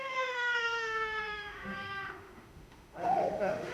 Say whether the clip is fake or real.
fake